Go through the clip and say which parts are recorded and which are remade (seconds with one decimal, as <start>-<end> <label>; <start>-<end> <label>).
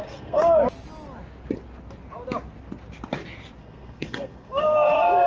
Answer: 0.0-0.6 remade; 0.6-3.6 recorded; 3.6-5.3 remade